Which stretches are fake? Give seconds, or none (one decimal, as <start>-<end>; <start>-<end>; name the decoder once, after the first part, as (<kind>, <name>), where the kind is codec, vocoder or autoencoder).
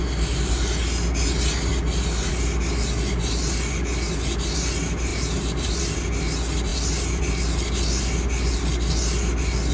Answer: none